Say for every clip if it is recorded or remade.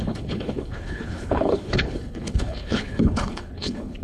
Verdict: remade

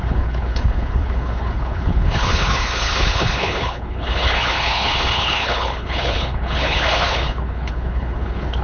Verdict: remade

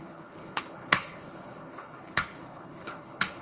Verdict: remade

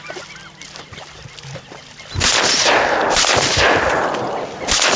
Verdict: recorded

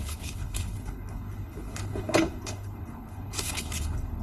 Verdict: remade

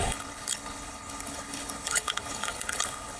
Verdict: remade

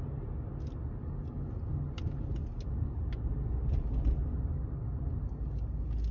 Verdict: recorded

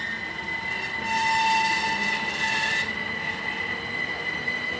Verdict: recorded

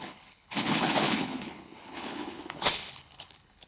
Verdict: remade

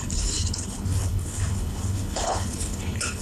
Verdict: remade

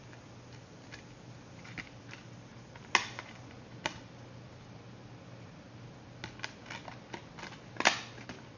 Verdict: recorded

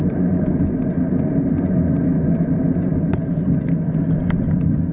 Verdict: recorded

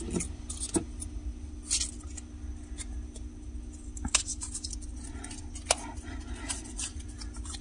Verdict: recorded